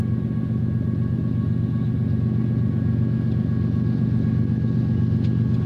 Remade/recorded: recorded